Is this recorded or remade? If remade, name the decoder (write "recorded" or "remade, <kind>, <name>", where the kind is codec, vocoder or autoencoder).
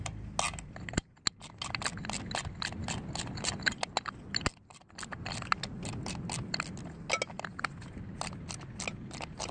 recorded